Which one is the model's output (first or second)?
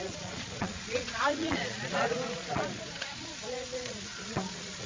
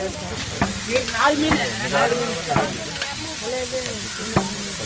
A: first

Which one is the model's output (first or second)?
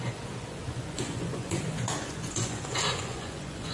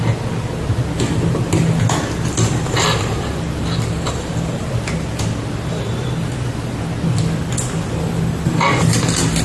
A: first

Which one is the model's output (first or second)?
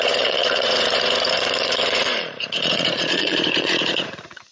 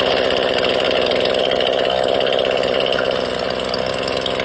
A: first